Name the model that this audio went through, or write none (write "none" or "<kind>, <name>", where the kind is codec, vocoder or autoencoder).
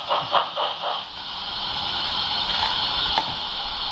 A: autoencoder, DAC-VAE